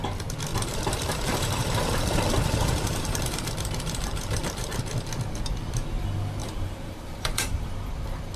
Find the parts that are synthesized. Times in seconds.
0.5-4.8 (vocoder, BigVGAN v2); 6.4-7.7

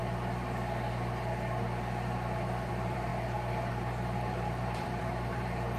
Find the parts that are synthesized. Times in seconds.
2.7-3.1 (vocoder, BigVGAN v2); 3.7-5.8

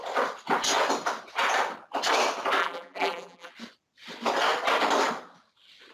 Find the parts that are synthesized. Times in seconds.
2.6-3.5 (vocoder, BigVGAN v2)

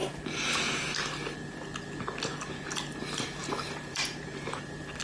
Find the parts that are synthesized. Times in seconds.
0.0-0.6 (vocoder, BigVGAN v2); 3.4-5.0

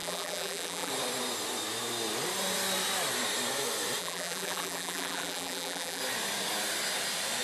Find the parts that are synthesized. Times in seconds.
0.0-0.9 (vocoder, BigVGAN v2); 4.0-6.0

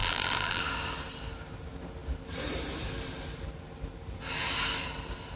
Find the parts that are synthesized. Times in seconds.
0.0-0.6 (vocoder, BigVGAN v2)

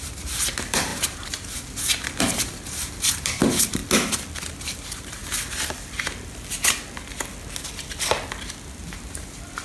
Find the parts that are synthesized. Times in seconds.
0.0-3.8 (vocoder, BigVGAN v2); 4.6-5.2; 8.8-9.6